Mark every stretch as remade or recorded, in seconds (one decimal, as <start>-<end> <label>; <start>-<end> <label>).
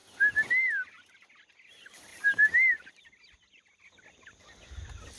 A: 0.0-2.1 recorded; 2.1-2.9 remade; 2.9-5.2 recorded